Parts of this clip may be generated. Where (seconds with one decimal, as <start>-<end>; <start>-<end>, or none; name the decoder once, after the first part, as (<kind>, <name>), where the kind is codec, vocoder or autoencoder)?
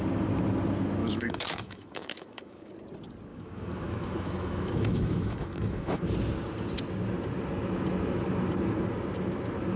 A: 1.0-2.7 (autoencoder, DAC-VAE); 3.3-6.0